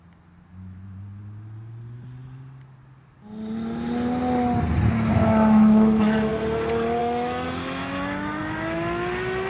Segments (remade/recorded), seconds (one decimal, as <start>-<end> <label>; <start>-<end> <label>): 0.0-5.2 recorded; 5.2-6.3 remade; 6.3-7.0 recorded; 7.0-7.9 remade; 7.9-9.5 recorded